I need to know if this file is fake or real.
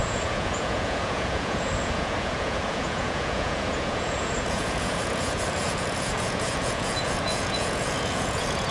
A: fake